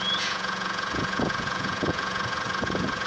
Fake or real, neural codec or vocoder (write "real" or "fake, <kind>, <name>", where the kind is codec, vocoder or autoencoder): fake, vocoder, Vocos